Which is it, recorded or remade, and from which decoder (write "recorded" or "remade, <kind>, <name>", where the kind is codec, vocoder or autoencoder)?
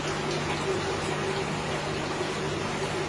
recorded